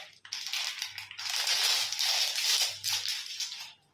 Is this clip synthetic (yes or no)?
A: no